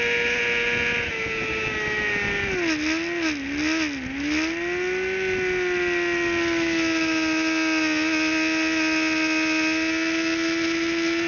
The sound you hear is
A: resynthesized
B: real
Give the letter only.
B